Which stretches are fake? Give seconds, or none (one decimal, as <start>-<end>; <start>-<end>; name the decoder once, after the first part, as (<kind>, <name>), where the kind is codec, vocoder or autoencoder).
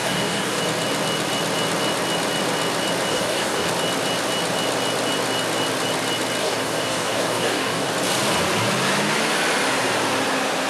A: 0.0-0.6 (codec, DAC); 3.1-3.7; 6.4-7.9